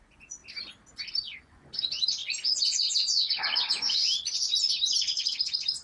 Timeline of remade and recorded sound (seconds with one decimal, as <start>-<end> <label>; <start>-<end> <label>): 0.0-0.4 remade; 0.4-1.1 recorded; 1.1-5.8 remade